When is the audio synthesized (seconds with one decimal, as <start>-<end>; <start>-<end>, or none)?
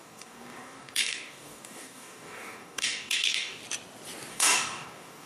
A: 0.0-3.6; 4.3-5.3